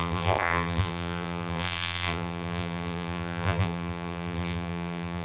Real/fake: fake